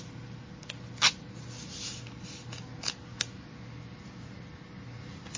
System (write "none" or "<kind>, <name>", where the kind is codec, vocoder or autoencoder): none